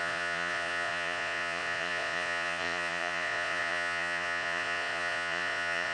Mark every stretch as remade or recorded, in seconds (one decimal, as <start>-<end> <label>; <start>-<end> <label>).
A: 0.0-5.9 remade